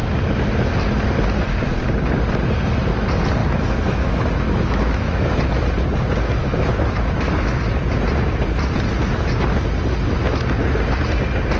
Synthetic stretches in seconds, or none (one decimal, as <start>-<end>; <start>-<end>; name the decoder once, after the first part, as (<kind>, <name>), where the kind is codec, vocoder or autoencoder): 3.4-5.4 (autoencoder, DAC-VAE); 6.4-7.6